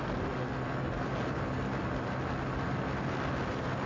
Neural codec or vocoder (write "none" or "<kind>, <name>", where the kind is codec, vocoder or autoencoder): none